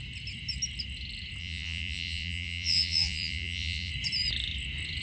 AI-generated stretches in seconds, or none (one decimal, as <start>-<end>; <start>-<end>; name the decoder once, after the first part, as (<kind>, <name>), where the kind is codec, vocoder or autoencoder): 1.4-3.9 (vocoder, Vocos)